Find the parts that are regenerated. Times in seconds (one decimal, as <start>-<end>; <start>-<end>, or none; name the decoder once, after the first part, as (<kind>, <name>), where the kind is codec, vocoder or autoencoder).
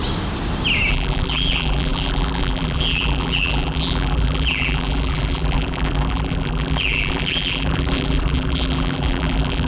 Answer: 0.9-9.7 (vocoder, BigVGAN v2)